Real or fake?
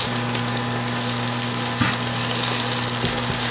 real